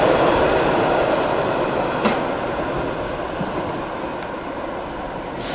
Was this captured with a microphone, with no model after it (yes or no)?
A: yes